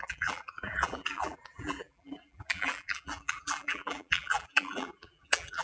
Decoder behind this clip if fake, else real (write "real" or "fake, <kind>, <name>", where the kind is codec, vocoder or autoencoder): fake, vocoder, BigVGAN v2